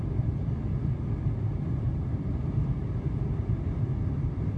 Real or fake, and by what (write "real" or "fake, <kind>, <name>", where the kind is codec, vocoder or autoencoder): real